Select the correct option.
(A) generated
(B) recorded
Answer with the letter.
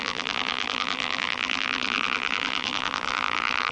A